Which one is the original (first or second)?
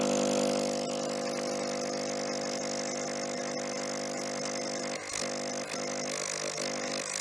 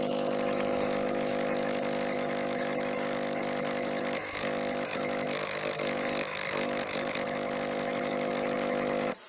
first